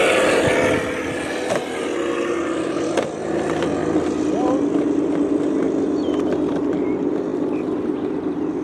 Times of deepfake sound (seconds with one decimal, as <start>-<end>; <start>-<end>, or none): 0.0-0.5; 3.3-3.8; 6.5-7.3; 7.9-8.6